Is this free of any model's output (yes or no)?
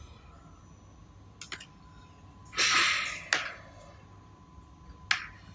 yes